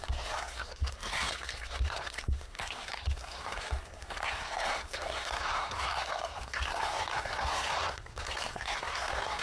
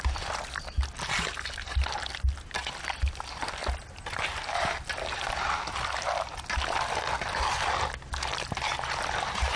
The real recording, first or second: second